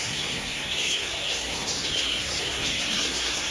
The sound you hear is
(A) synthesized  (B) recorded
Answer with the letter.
A